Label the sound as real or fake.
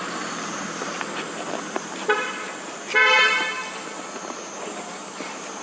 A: fake